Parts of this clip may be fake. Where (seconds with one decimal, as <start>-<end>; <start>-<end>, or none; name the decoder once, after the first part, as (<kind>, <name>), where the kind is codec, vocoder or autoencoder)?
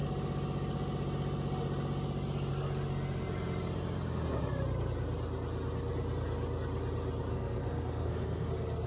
7.3-8.5 (codec, SNAC)